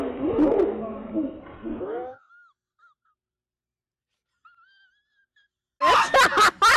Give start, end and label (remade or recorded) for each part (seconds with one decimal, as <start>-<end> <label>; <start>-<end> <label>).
0.0-1.7 recorded; 1.7-2.3 remade; 2.3-6.8 recorded